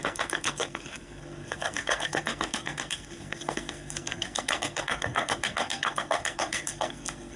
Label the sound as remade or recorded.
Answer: remade